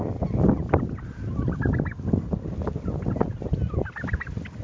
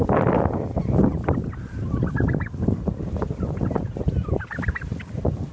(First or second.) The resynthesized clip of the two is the second